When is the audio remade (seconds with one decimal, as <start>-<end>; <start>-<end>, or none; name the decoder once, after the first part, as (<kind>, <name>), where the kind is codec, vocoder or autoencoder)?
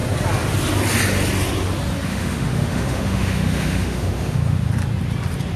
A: 2.1-4.7 (autoencoder, DAC-VAE)